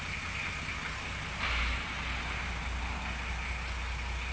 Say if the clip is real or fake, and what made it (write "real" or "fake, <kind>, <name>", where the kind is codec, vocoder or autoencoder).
real